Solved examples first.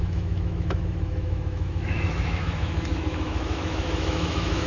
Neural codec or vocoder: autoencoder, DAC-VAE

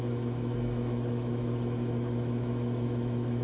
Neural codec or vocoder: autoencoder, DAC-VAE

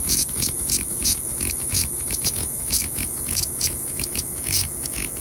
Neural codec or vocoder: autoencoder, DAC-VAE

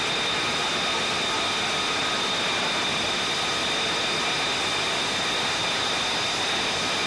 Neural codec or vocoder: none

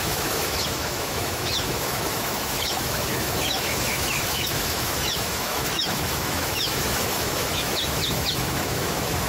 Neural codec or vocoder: autoencoder, DAC-VAE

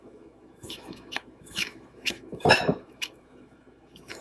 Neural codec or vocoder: autoencoder, DAC-VAE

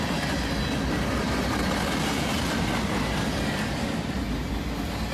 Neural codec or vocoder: none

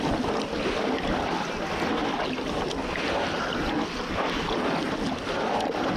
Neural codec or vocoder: none